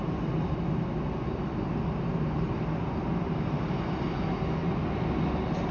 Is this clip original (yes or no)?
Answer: yes